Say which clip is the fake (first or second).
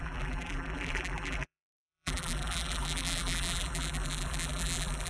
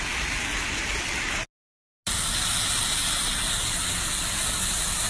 first